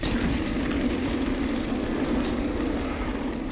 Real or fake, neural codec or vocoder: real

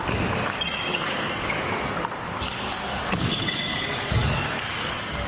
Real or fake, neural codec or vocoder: fake, codec, DAC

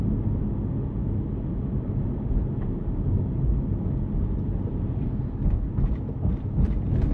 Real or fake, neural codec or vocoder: real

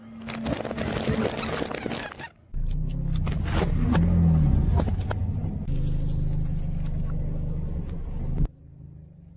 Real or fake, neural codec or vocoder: real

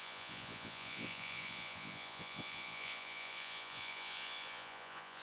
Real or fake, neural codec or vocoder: fake, vocoder, Vocos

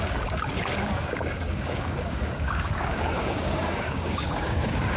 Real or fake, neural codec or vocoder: fake, codec, DAC